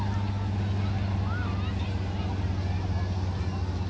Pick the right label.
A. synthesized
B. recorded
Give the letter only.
B